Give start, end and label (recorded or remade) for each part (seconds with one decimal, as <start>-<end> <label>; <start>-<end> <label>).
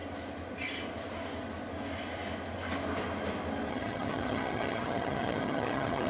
0.0-3.7 recorded; 3.7-6.1 remade